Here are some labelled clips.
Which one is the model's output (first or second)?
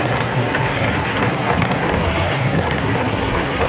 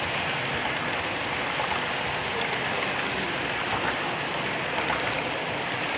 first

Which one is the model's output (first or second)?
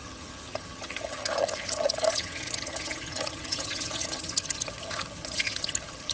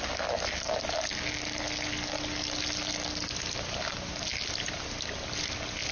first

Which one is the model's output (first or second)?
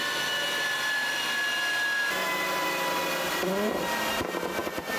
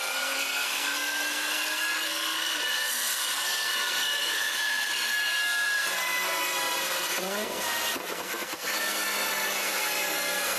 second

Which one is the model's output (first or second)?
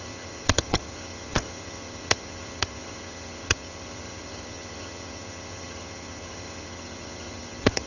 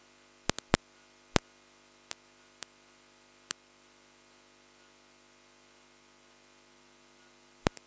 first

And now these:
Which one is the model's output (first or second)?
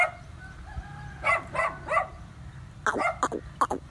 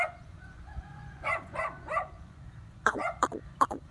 second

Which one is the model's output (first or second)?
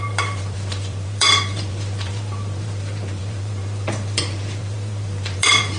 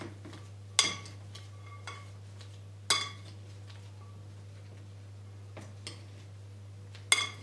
first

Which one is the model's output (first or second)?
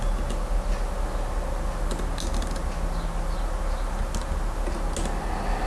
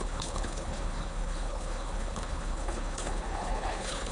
second